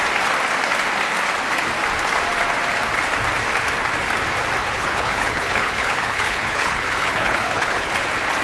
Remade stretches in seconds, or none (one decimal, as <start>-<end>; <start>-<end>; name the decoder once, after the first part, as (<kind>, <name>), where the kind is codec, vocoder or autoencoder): 4.6-7.9 (codec, HILCodec)